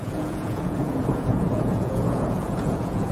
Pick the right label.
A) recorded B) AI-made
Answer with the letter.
B